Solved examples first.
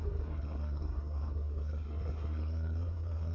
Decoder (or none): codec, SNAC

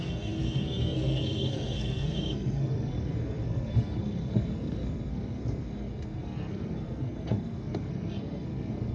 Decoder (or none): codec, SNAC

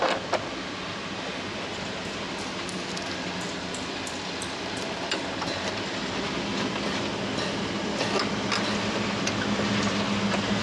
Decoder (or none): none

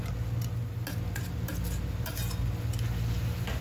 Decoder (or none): none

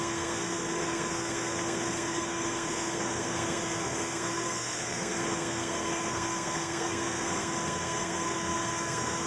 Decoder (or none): codec, SNAC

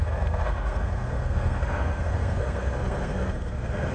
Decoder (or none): codec, SNAC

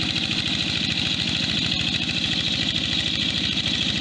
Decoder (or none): none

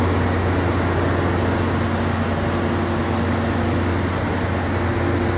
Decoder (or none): none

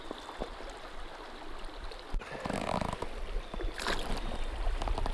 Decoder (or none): none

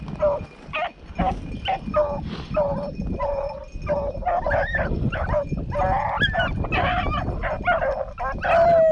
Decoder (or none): none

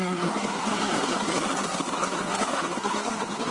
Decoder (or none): codec, SNAC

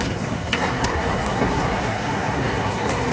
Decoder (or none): codec, SNAC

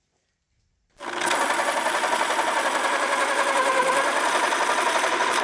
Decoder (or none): none